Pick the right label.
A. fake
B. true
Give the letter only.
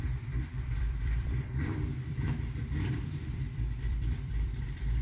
A